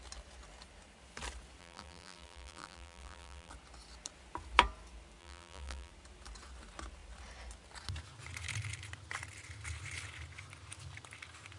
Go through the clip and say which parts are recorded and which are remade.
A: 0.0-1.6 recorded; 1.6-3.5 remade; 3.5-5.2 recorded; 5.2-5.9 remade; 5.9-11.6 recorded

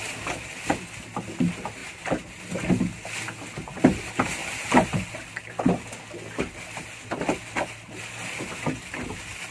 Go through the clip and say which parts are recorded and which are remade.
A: 0.0-1.8 recorded; 1.8-2.4 remade; 2.4-4.4 recorded; 4.4-5.0 remade; 5.0-9.5 recorded

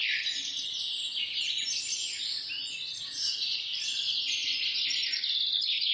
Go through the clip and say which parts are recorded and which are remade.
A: 0.0-4.4 recorded; 4.4-5.1 remade; 5.1-5.9 recorded

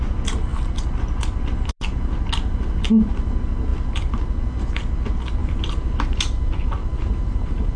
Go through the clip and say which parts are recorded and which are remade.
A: 0.0-5.4 recorded; 5.4-6.2 remade; 6.2-6.8 recorded; 6.8-7.8 remade

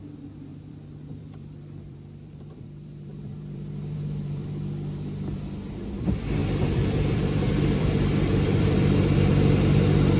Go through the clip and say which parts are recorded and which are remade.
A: 0.0-0.5 recorded; 0.5-4.6 remade; 4.6-6.4 recorded; 6.4-9.3 remade; 9.3-10.2 recorded